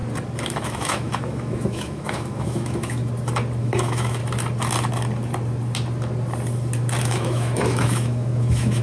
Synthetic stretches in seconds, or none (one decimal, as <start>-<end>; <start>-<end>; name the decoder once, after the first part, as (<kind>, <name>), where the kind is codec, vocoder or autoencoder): 0.6-3.0 (autoencoder, DAC-VAE); 3.6-4.2; 7.0-8.8